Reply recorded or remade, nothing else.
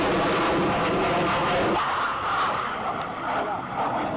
recorded